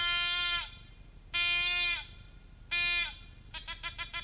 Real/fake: real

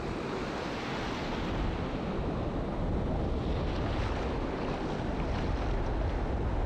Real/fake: real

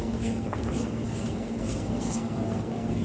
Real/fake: fake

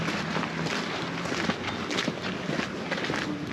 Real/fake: real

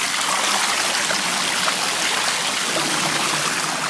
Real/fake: real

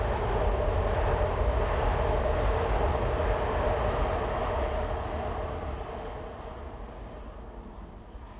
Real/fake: real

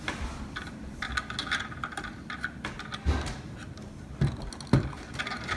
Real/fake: real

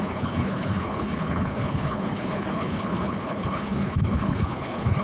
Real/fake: fake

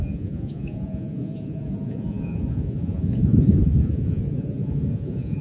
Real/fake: fake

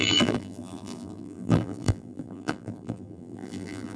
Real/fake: fake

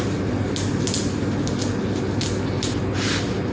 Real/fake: real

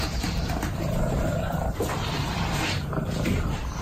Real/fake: fake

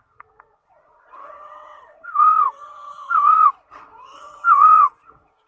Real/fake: fake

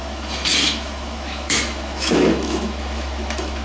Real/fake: fake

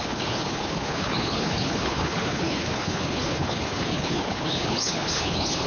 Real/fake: fake